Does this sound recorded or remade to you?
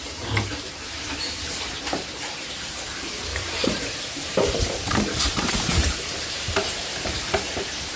remade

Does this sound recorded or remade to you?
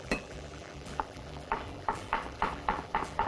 remade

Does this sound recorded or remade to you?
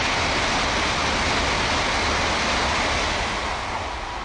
recorded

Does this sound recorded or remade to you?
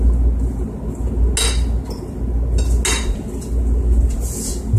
recorded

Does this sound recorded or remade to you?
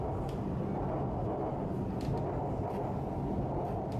recorded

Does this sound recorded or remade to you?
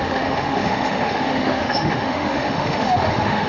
remade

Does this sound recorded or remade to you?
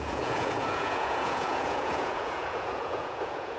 remade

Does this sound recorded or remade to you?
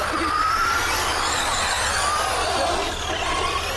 recorded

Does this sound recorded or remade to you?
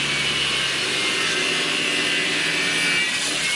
recorded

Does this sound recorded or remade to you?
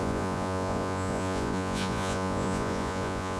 remade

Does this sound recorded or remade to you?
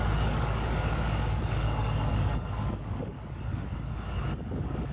remade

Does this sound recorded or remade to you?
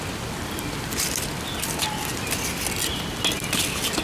recorded